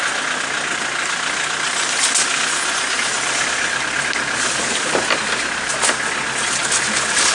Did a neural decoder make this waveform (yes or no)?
no